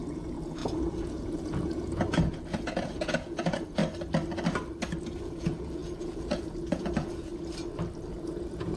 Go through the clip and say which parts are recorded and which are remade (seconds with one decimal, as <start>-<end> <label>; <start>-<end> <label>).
0.0-3.8 remade; 3.8-5.0 recorded; 5.0-7.3 remade; 7.3-8.1 recorded; 8.1-8.8 remade